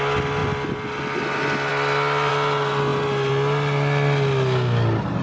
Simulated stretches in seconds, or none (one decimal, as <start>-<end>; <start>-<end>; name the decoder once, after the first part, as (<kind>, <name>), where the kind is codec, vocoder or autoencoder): none